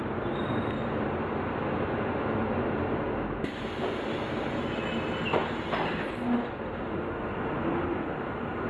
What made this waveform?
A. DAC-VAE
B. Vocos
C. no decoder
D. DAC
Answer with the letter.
C